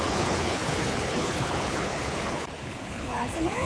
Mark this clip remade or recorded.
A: remade